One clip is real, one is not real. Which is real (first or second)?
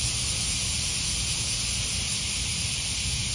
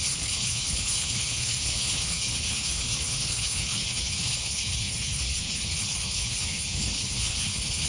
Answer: first